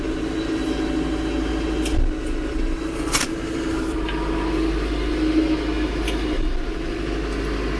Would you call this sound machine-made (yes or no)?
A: no